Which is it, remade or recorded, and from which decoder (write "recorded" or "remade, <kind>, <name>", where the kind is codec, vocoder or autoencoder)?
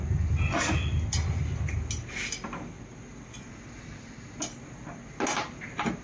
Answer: recorded